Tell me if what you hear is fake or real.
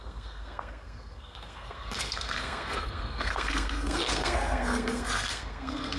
fake